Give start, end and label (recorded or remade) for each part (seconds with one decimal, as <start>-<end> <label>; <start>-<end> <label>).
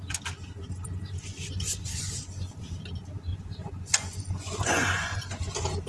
0.0-0.9 recorded; 0.9-2.5 remade; 2.5-3.3 recorded; 3.3-5.4 remade; 5.4-5.9 recorded